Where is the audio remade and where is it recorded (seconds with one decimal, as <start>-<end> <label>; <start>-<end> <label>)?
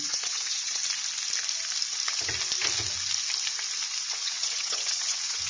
0.0-0.8 remade; 0.8-4.1 recorded; 4.1-5.5 remade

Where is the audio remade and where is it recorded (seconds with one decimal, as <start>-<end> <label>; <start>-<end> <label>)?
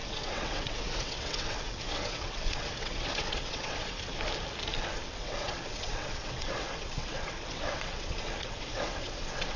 0.0-4.1 remade; 4.1-4.8 recorded; 4.8-9.6 remade